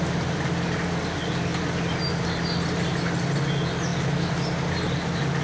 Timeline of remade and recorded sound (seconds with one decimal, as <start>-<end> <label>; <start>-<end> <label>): 0.0-5.4 recorded